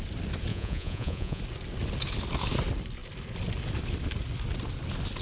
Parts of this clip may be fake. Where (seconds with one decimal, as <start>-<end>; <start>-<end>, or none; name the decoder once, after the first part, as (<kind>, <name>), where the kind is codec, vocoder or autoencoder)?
0.5-1.4 (vocoder, Vocos)